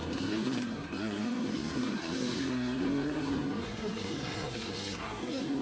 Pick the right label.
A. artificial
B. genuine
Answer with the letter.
A